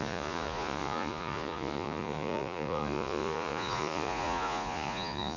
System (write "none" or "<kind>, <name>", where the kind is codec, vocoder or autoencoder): vocoder, Vocos